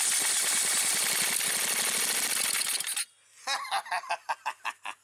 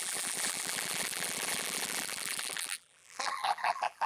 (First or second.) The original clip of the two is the first